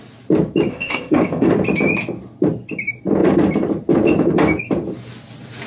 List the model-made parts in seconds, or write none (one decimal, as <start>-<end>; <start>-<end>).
0.7-1.5